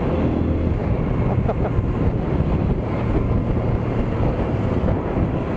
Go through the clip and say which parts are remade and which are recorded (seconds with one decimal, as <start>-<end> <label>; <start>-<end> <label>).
0.0-5.6 recorded